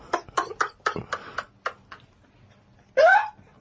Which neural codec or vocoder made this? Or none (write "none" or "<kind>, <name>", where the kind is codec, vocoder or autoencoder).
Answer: none